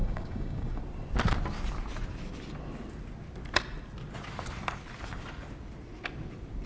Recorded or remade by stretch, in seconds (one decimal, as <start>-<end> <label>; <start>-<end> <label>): 0.0-0.8 remade; 0.8-6.7 recorded